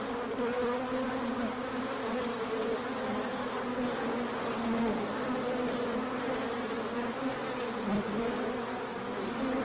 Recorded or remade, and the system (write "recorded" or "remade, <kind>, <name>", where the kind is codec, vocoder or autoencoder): recorded